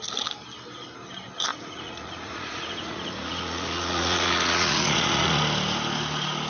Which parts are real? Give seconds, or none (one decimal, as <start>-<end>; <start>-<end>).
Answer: 0.0-1.5; 5.4-6.5